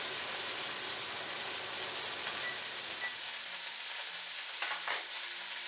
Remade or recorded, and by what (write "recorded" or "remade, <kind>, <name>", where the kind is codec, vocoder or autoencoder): recorded